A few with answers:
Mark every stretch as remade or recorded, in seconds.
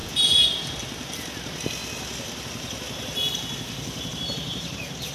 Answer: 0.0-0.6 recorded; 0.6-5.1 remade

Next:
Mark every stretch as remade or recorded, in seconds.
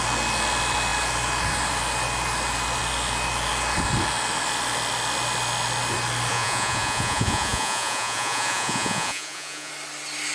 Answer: 0.0-6.3 recorded; 6.3-9.7 remade; 9.7-10.3 recorded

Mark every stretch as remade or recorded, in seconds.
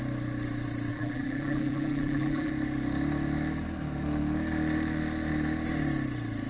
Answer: 0.0-0.9 recorded; 0.9-2.5 remade; 2.5-6.5 recorded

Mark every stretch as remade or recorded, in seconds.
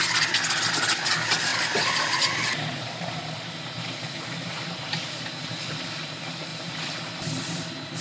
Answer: 0.0-1.5 recorded; 1.5-5.6 remade; 5.6-6.5 recorded; 6.5-8.0 remade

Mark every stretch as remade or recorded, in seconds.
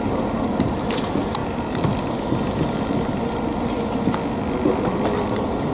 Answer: 0.0-5.7 recorded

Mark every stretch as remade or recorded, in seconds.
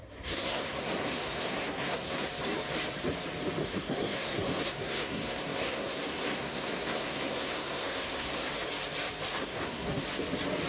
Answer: 0.0-2.3 remade; 2.3-3.6 recorded; 3.6-8.5 remade; 8.5-9.4 recorded; 9.4-10.0 remade; 10.0-10.7 recorded